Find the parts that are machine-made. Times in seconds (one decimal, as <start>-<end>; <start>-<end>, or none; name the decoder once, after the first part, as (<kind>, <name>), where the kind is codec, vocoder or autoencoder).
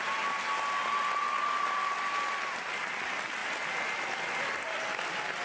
none